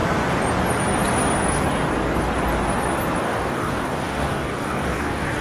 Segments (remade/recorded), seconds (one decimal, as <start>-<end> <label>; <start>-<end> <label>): 0.0-3.2 recorded; 3.2-5.4 remade